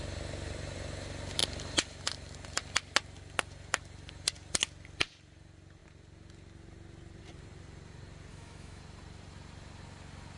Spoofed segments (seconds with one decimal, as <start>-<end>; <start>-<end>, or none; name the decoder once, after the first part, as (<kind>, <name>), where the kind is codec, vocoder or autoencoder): 8.3-8.8 (autoencoder, DAC-VAE)